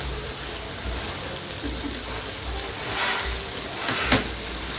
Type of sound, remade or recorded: recorded